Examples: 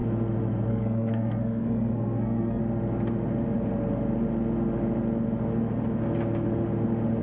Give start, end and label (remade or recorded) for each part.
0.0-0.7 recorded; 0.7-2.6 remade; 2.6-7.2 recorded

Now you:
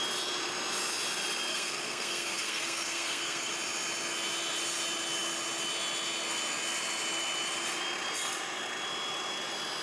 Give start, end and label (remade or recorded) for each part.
0.0-1.5 recorded; 1.5-3.5 remade; 3.5-9.8 recorded

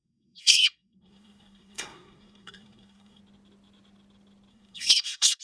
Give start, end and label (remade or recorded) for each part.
0.0-3.2 remade; 3.2-4.5 recorded; 4.5-5.4 remade